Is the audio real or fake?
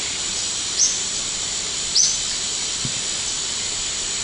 real